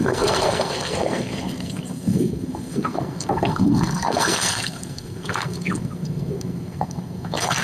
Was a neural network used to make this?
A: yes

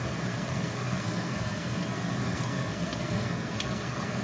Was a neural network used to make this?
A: yes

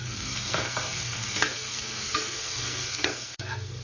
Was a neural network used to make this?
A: yes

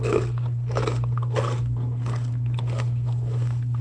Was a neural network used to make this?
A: yes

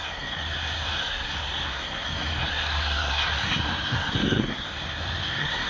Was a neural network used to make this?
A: yes